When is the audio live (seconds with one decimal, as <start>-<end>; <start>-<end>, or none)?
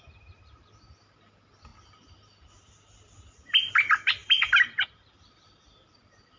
0.0-1.7; 3.7-4.2